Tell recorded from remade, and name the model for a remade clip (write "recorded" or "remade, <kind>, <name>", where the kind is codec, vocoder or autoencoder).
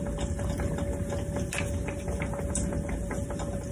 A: recorded